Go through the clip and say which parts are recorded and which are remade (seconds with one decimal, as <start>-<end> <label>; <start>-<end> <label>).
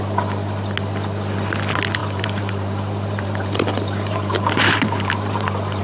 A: 0.0-2.0 recorded; 2.0-5.8 remade